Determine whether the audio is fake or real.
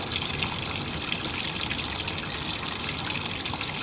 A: real